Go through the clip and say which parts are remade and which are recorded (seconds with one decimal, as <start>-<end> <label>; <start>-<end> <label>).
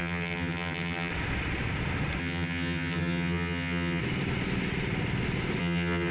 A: 0.0-1.1 remade; 1.1-2.2 recorded; 2.2-4.0 remade; 4.0-5.6 recorded; 5.6-6.1 remade